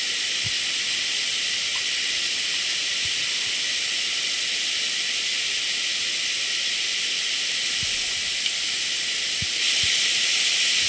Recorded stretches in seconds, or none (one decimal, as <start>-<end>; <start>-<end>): 0.0-1.7; 2.3-10.9